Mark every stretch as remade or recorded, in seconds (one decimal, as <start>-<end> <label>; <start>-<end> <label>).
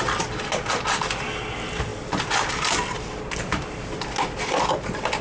0.0-5.2 recorded